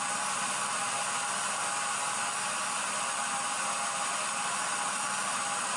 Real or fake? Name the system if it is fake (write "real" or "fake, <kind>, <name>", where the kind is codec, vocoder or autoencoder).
real